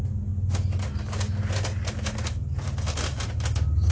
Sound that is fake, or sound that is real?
real